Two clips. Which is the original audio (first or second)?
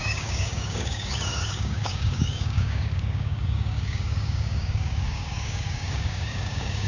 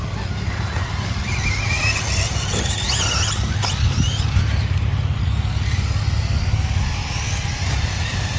second